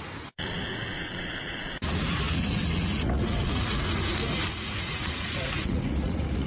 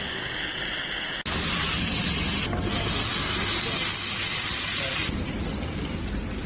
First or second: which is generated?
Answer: first